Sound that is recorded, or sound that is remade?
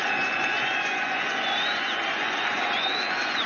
remade